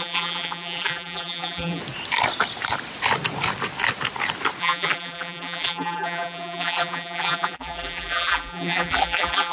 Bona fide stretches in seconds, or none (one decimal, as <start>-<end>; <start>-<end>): 1.8-4.6